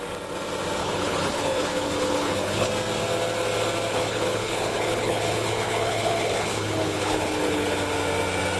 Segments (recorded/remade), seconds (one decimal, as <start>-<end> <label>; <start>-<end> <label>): 0.0-0.8 recorded; 0.8-2.7 remade; 2.7-3.9 recorded; 3.9-7.8 remade; 7.8-8.6 recorded